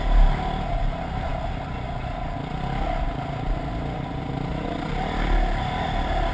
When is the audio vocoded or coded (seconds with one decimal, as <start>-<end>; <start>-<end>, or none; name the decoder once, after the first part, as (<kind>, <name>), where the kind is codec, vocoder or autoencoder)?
none